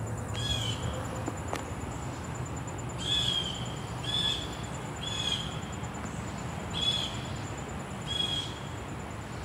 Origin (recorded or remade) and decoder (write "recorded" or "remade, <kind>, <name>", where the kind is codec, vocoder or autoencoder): recorded